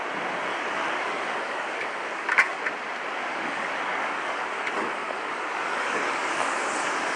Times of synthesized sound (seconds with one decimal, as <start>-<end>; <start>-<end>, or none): 0.5-2.6; 3.3-6.6